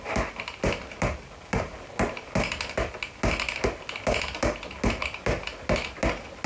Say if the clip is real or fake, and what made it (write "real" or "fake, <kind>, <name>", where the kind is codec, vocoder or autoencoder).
real